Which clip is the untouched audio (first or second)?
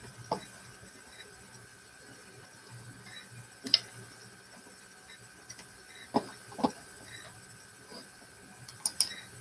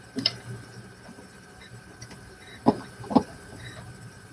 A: first